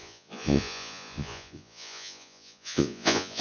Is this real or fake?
fake